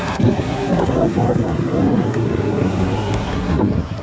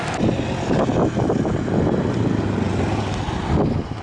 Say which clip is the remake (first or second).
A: first